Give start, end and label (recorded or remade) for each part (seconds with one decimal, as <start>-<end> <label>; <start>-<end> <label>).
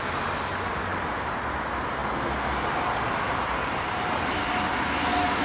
0.0-5.4 recorded